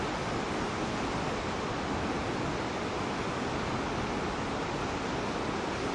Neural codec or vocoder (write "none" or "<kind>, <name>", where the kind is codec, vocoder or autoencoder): none